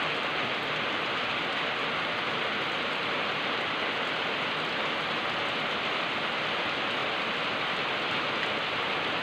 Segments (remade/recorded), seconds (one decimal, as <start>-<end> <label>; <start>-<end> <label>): 0.0-7.0 recorded; 7.0-7.6 remade; 7.6-9.2 recorded